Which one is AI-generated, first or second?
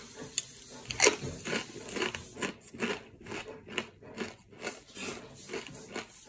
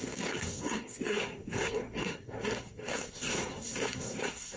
second